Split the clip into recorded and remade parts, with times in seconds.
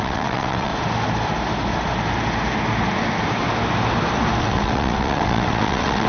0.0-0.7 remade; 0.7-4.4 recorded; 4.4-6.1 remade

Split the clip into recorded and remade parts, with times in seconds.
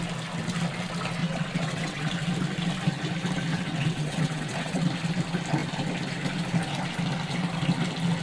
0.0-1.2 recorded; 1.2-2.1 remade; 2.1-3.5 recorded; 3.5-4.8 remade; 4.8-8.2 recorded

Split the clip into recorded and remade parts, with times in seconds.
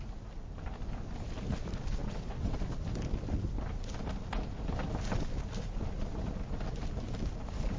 0.0-2.0 recorded; 2.0-2.6 remade; 2.6-7.8 recorded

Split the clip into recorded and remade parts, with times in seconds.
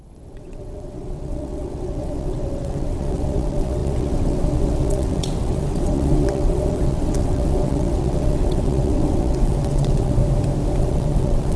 0.0-10.2 remade; 10.2-10.8 recorded; 10.8-11.6 remade